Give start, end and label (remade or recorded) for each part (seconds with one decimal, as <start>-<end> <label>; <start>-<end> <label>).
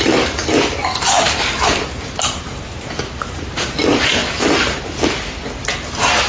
0.0-0.8 remade; 0.8-1.9 recorded; 1.9-4.2 remade; 4.2-6.3 recorded